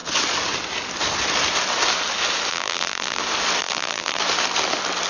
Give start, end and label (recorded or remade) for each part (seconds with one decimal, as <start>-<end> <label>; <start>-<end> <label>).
0.0-2.5 recorded; 2.5-3.2 remade; 3.2-3.6 recorded; 3.6-4.2 remade; 4.2-5.1 recorded